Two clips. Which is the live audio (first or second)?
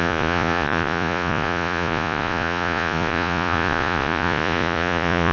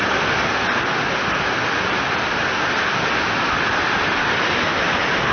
second